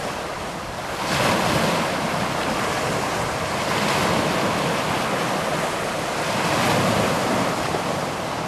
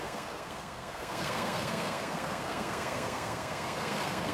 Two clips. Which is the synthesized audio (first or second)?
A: second